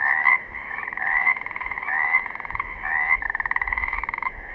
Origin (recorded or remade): remade